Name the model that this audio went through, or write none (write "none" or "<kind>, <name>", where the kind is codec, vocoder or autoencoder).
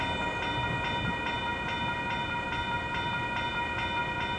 none